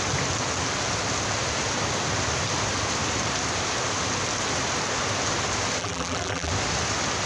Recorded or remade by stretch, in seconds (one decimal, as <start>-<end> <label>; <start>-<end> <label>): 0.0-5.8 recorded; 5.8-6.5 remade; 6.5-7.3 recorded